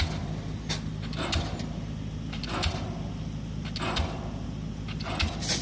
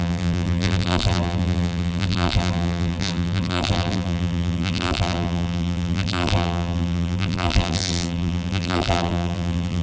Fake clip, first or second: second